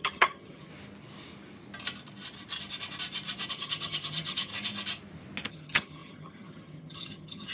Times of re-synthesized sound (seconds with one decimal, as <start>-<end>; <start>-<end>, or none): 0.0-0.7; 3.5-4.5; 5.5-7.5